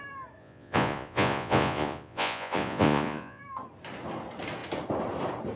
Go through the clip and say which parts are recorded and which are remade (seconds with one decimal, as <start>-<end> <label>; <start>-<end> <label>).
0.0-0.4 recorded; 0.4-3.4 remade; 3.4-5.6 recorded